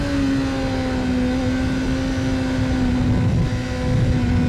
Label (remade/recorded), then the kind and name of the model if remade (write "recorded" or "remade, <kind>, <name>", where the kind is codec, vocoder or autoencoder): recorded